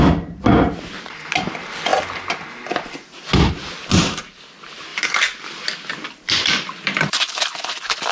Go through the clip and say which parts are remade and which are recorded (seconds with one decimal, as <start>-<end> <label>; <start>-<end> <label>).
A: 0.0-4.9 recorded; 4.9-7.0 remade; 7.0-8.1 recorded